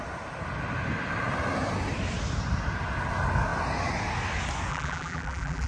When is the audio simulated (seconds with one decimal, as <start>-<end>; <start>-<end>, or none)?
4.7-5.7